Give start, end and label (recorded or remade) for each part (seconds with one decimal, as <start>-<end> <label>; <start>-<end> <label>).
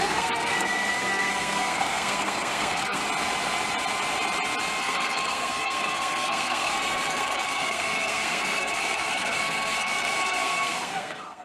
0.0-3.0 remade; 3.0-4.8 recorded; 4.8-11.4 remade